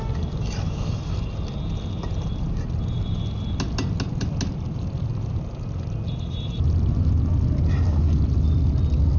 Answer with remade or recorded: recorded